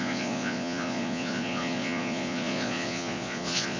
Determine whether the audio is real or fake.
fake